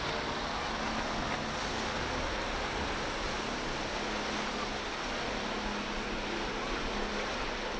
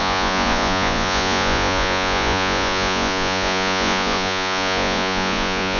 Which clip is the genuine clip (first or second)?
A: first